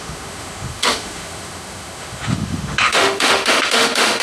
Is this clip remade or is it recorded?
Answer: remade